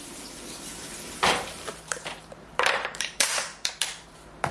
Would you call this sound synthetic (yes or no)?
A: yes